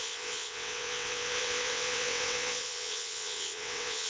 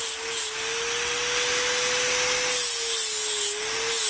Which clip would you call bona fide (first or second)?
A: second